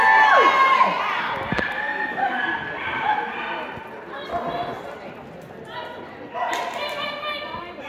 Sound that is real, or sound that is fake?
real